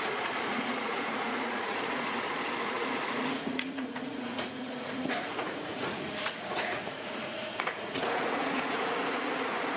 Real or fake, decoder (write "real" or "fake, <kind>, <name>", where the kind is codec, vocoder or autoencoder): fake, vocoder, Vocos